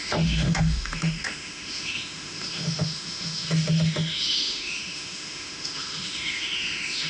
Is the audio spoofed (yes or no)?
yes